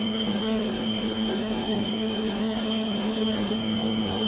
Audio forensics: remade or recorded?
remade